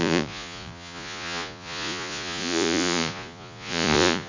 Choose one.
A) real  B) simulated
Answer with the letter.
B